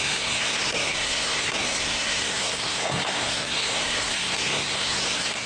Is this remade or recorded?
remade